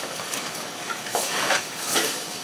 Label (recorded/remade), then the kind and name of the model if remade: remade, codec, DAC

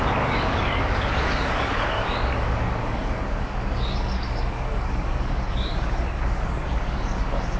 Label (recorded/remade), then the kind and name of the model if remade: remade, codec, DAC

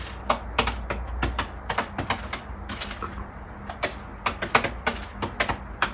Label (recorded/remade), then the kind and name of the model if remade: recorded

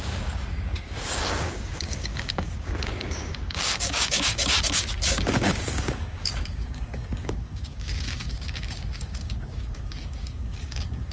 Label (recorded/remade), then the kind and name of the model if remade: remade, codec, DAC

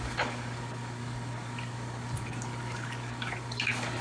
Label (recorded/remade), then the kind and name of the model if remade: remade, codec, DAC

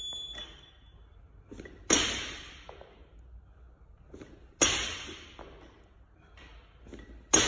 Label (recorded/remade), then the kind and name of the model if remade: recorded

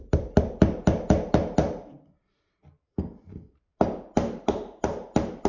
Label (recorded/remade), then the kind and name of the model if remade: recorded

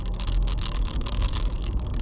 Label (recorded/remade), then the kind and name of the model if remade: remade, codec, DAC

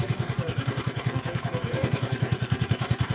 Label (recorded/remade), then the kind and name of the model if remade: remade, codec, DAC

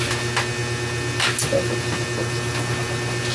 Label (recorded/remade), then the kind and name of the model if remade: recorded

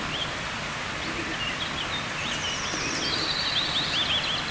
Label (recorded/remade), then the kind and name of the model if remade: recorded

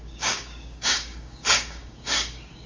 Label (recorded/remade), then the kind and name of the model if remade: remade, codec, DAC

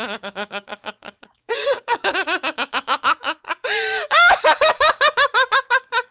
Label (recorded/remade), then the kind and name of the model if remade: remade, codec, DAC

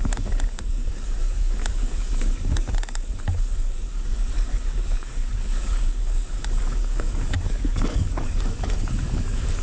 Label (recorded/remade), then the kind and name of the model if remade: remade, codec, DAC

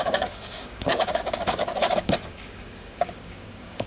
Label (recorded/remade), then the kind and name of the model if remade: remade, codec, DAC